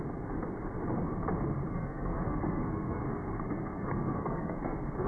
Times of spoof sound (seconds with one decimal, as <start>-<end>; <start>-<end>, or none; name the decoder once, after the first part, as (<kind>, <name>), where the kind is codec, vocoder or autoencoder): 1.7-5.1 (codec, SNAC)